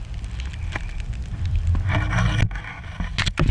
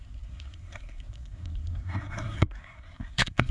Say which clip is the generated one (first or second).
second